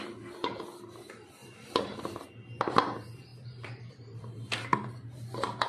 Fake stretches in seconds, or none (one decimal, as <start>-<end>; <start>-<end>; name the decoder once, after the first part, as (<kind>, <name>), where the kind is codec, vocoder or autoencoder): none